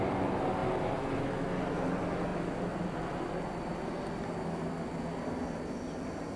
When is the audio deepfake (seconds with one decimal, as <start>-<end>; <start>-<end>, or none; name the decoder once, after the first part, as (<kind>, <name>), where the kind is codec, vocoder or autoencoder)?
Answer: none